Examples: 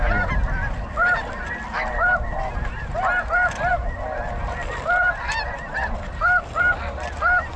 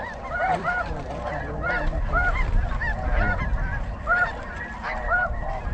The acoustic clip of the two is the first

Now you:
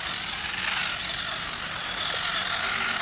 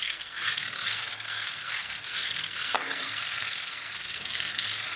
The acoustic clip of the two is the first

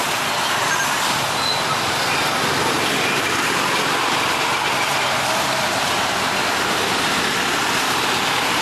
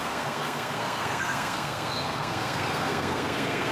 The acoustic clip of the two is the first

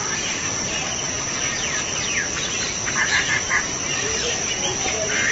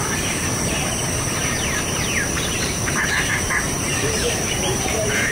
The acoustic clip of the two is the first